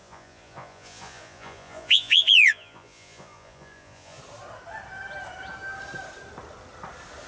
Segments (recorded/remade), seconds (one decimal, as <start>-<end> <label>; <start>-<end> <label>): 0.0-4.2 remade; 4.2-7.3 recorded